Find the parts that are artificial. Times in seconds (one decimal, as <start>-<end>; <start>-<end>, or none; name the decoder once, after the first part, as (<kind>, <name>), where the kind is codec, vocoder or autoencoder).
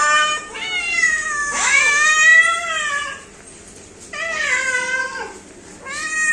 0.0-2.3 (autoencoder, DAC-VAE)